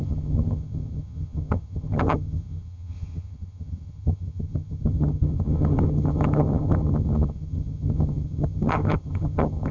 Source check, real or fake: fake